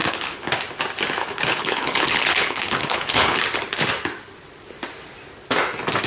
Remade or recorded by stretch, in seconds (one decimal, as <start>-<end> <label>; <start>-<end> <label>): 0.0-0.5 remade; 0.5-1.2 recorded; 1.2-3.4 remade; 3.4-6.1 recorded